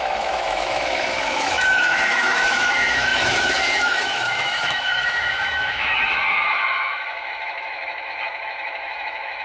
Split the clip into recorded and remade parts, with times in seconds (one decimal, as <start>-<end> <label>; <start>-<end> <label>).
0.0-9.4 remade